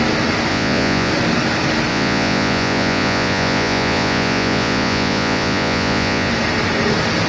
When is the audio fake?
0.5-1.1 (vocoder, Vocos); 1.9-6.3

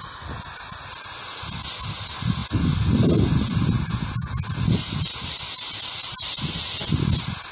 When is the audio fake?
none

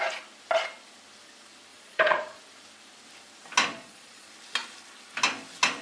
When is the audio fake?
1.7-2.4 (vocoder, Vocos); 3.7-4.3

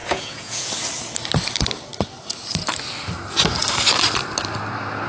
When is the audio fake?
0.0-0.7 (vocoder, Vocos)